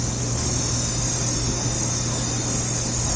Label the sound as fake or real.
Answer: real